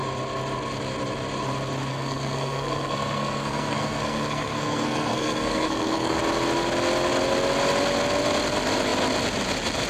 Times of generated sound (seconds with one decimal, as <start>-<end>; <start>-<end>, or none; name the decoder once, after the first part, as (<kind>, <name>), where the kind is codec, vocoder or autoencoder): 1.9-6.2 (codec, SNAC)